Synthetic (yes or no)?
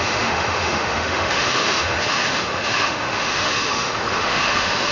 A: yes